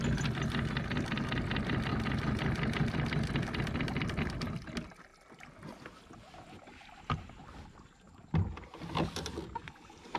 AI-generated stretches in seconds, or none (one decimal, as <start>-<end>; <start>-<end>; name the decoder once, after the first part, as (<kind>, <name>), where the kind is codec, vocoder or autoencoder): none